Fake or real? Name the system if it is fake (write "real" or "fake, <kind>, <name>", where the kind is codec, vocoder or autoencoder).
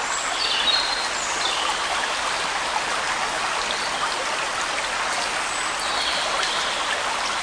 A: real